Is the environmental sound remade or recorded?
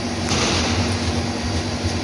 recorded